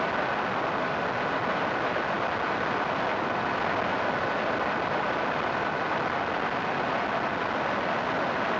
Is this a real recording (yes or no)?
yes